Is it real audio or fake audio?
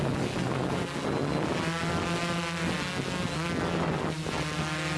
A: real